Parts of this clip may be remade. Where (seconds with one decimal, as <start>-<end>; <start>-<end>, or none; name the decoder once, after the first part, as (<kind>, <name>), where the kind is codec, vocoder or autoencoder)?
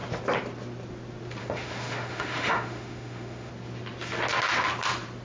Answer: 1.4-3.5 (autoencoder, DAC-VAE)